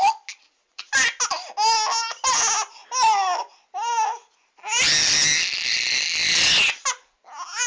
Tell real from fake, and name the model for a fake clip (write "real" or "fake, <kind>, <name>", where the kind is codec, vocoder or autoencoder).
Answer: real